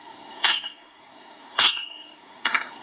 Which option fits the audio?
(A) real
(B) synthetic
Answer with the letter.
B